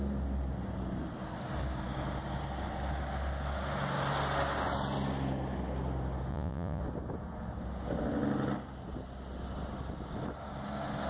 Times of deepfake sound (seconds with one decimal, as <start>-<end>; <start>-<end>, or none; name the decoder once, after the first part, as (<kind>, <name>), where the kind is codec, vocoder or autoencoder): 6.3-6.8 (vocoder, Vocos)